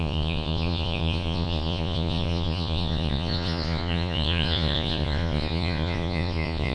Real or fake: fake